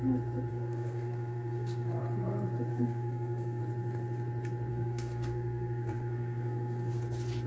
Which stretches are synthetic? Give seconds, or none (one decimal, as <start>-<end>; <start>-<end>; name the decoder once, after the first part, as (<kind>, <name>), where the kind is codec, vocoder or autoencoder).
0.5-2.0 (codec, SNAC); 2.7-3.6; 4.7-7.0